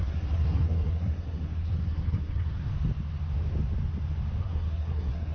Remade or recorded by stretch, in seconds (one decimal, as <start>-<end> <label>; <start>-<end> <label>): 0.0-2.7 remade; 2.7-4.4 recorded; 4.4-5.3 remade